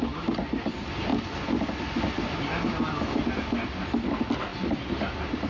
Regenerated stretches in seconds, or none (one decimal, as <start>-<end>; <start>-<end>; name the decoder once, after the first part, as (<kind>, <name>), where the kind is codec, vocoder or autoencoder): none